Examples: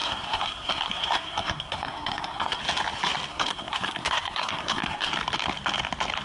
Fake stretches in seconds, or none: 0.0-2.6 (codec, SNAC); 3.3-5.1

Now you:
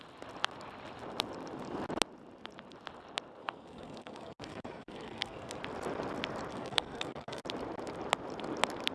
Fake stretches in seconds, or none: 3.4-5.6 (codec, SNAC); 6.5-7.4

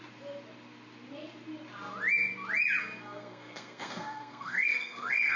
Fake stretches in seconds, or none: 2.8-5.4 (codec, SNAC)

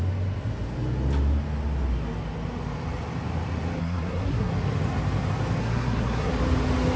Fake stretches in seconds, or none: 3.8-4.5 (codec, SNAC); 5.6-6.3